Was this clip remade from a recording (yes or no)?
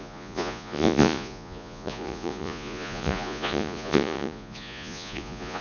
yes